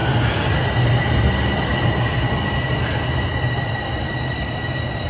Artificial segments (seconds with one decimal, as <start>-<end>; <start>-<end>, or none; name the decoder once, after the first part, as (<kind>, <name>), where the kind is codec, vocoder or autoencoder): 0.8-1.7 (vocoder, BigVGAN v2)

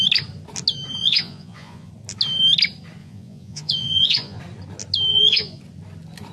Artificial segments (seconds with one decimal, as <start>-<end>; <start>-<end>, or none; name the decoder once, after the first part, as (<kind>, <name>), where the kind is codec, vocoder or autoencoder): 1.0-1.9 (vocoder, Vocos); 3.0-4.4; 5.1-5.6

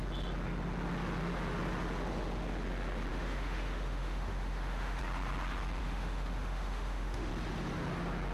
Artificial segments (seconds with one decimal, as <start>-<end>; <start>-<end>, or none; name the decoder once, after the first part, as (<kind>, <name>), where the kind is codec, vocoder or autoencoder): 3.1-5.0 (autoencoder, DAC-VAE); 5.8-7.3

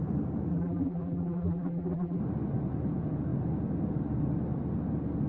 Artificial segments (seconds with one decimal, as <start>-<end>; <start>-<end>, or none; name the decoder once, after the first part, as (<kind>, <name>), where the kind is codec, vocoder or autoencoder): 0.5-2.2 (vocoder, BigVGAN v2)

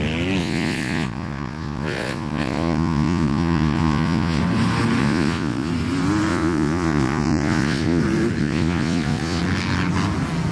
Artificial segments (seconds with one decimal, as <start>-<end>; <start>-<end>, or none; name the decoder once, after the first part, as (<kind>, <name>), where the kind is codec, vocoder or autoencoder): 0.4-4.4 (vocoder, Vocos); 5.0-5.7; 6.3-8.0; 8.4-9.4

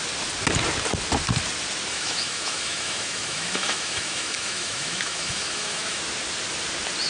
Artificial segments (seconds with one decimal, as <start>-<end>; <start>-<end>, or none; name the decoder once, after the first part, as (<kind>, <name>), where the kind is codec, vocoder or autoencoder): 1.9-6.0 (autoencoder, DAC-VAE)

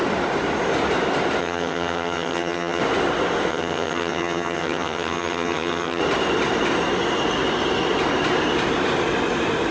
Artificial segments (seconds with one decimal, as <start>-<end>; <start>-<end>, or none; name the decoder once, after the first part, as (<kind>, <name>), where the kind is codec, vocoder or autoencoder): 1.4-2.8 (vocoder, HiFi-GAN); 3.5-6.0

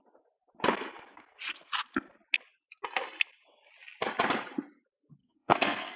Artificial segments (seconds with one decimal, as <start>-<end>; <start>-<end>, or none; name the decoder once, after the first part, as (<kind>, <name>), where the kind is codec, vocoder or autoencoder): 5.2-6.0 (codec, SNAC)